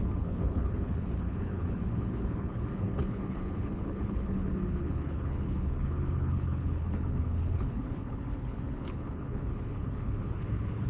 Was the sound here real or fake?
fake